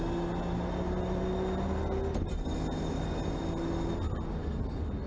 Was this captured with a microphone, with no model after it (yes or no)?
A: yes